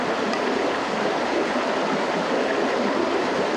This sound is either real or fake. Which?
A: fake